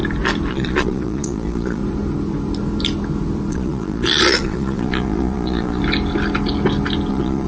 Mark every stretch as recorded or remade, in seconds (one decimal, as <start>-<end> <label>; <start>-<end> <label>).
0.0-0.5 recorded; 0.5-1.8 remade; 1.8-3.5 recorded; 3.5-5.8 remade; 5.8-7.1 recorded; 7.1-7.5 remade